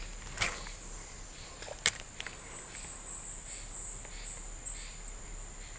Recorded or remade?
recorded